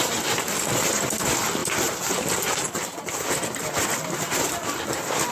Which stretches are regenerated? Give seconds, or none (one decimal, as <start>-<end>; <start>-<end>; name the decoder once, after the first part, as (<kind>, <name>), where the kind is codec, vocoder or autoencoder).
1.6-4.0 (vocoder, BigVGAN v2)